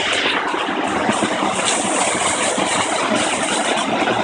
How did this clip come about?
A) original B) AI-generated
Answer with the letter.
A